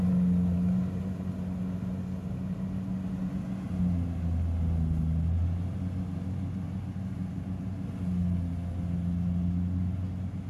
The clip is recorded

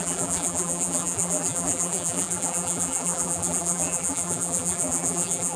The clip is remade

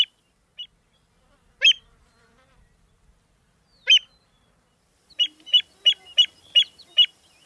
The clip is recorded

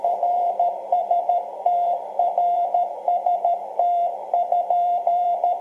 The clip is remade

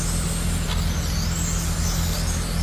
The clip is recorded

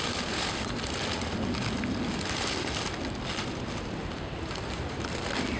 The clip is recorded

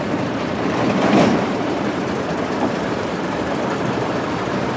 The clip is remade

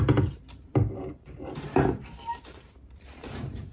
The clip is remade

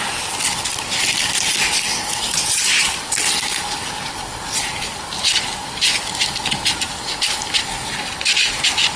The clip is recorded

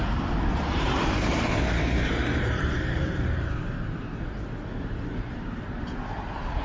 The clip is remade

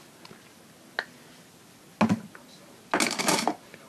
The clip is recorded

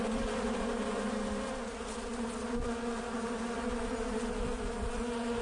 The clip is recorded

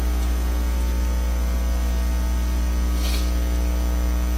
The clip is recorded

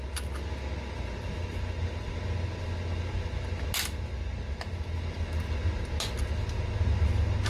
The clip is recorded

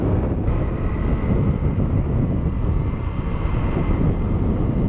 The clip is recorded